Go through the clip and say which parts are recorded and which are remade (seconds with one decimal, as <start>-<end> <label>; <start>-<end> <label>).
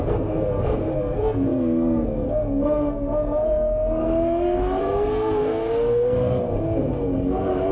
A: 0.0-7.7 remade